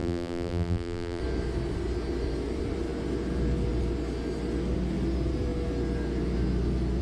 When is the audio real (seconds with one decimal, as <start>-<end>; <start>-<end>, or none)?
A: 1.2-7.0